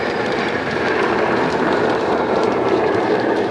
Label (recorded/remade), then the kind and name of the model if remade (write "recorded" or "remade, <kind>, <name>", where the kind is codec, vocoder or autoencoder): remade, vocoder, BigVGAN v2